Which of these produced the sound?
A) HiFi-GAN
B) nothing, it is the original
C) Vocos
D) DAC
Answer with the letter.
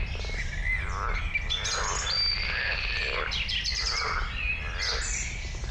B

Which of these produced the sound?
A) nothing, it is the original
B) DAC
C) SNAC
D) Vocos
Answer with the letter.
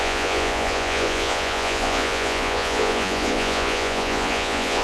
D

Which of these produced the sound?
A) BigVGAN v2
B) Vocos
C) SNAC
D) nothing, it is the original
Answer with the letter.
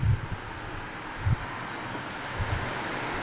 D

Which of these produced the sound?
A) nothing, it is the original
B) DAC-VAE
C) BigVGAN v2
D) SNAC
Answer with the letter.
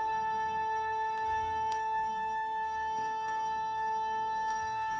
D